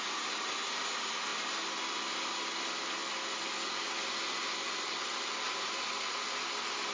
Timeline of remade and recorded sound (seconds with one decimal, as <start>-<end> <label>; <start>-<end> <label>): 0.0-6.9 recorded